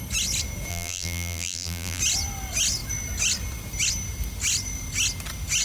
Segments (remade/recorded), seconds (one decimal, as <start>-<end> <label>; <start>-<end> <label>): 0.0-0.7 recorded; 0.7-2.0 remade; 2.0-5.6 recorded